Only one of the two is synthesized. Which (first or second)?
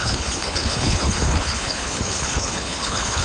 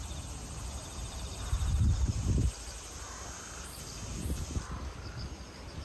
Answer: first